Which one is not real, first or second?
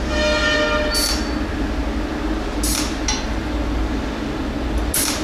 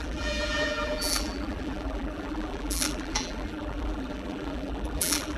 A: second